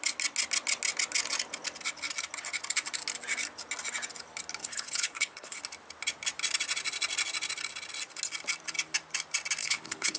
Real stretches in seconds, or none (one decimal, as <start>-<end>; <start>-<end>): 0.0-4.6; 5.6-9.6